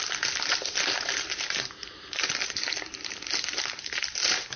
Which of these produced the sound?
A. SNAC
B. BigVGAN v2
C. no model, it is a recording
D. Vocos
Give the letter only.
B